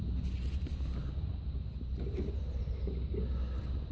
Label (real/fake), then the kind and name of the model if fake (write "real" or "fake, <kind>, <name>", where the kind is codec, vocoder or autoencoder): real